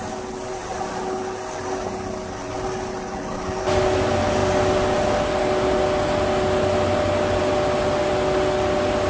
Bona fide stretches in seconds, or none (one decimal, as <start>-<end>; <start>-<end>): 0.0-9.1

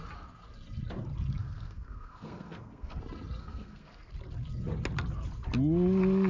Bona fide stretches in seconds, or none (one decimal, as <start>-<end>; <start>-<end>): 0.0-1.4; 3.0-3.4; 4.1-6.3

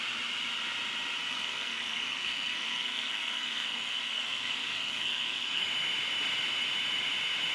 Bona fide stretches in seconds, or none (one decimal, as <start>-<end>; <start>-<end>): 0.0-1.2; 5.7-7.5